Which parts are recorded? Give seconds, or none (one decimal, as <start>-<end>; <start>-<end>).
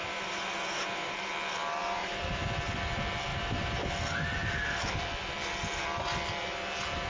1.3-1.8; 2.4-3.3; 3.8-7.1